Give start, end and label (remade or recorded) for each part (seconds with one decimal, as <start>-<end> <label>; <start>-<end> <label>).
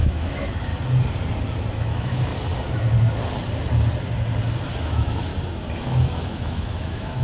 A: 0.0-0.7 remade; 0.7-1.7 recorded; 1.7-2.3 remade; 2.3-4.8 recorded; 4.8-5.3 remade; 5.3-5.8 recorded; 5.8-7.2 remade